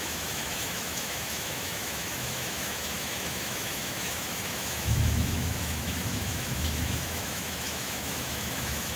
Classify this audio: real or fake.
fake